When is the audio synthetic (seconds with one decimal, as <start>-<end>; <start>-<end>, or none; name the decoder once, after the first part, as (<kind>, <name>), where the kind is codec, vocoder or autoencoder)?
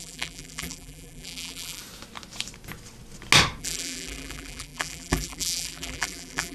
0.0-1.8 (vocoder, BigVGAN v2); 3.6-6.5